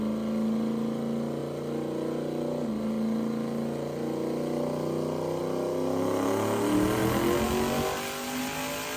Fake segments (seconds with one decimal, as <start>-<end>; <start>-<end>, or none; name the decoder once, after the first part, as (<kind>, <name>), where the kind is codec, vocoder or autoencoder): none